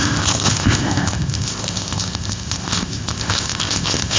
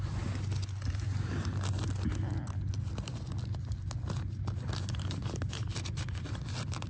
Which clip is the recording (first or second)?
second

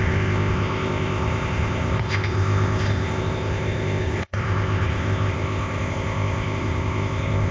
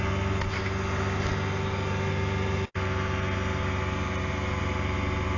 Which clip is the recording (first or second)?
second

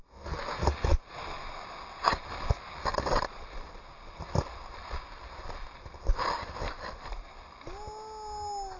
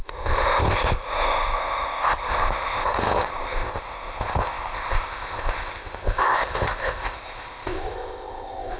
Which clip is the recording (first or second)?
first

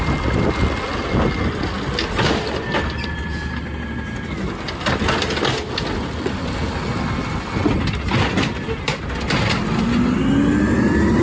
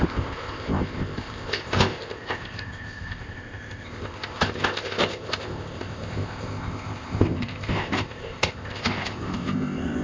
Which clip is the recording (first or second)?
first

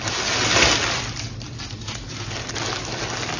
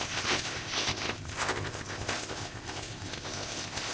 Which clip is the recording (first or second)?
first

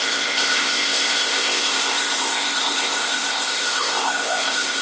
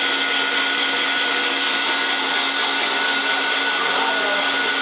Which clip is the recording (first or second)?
second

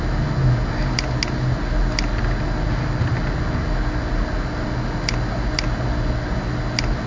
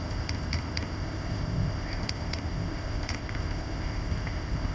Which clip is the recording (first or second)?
first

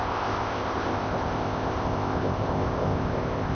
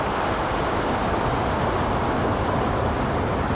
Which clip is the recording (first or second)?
second